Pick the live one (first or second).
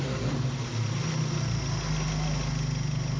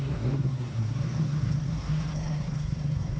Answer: first